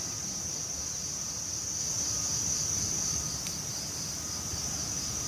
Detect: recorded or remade remade